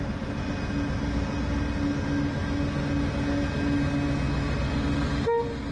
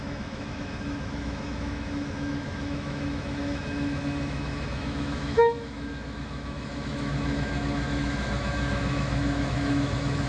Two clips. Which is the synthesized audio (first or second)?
second